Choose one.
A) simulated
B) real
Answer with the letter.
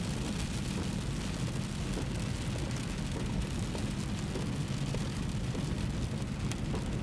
B